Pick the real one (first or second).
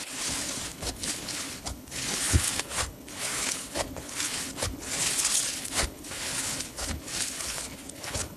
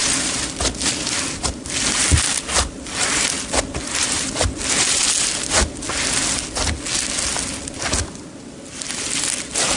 second